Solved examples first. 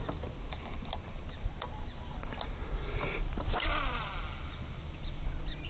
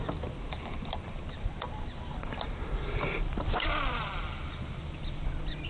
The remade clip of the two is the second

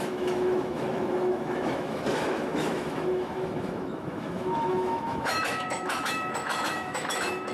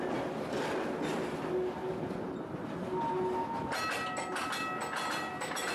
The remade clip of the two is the first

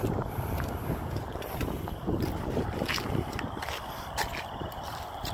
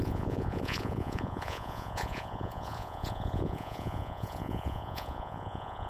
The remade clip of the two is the second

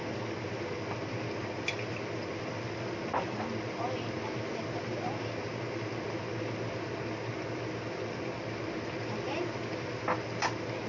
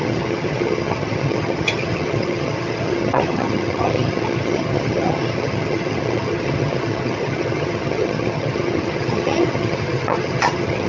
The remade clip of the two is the second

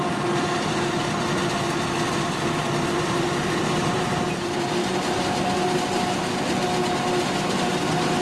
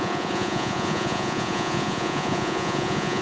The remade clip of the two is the second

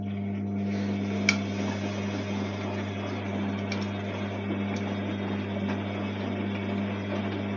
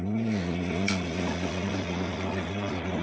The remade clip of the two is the second